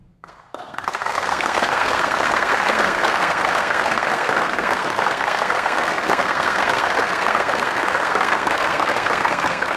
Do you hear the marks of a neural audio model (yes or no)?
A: yes